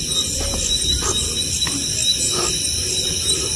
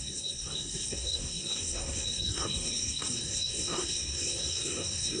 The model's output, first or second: second